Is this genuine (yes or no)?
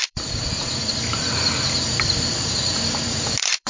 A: no